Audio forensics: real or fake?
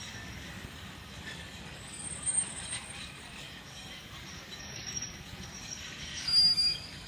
fake